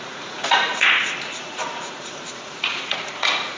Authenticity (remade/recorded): remade